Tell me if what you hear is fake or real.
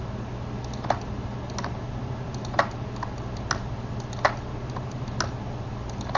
real